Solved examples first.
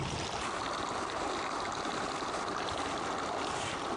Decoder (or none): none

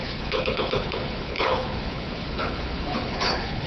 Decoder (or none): codec, HILCodec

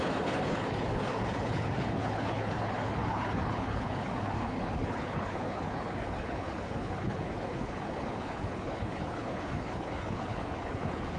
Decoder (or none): codec, HILCodec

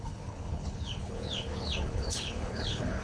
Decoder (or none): codec, HILCodec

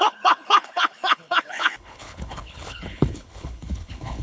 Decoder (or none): codec, HILCodec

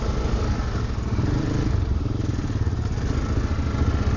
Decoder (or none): none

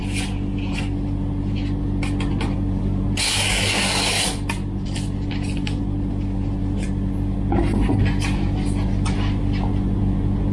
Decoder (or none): none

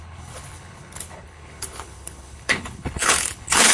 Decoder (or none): codec, HILCodec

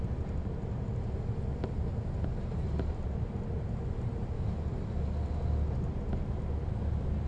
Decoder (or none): none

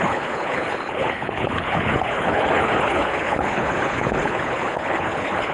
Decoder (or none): codec, HILCodec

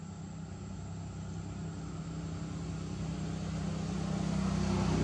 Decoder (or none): none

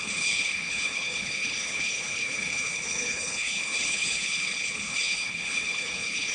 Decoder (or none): codec, HILCodec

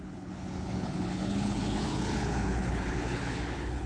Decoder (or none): codec, HILCodec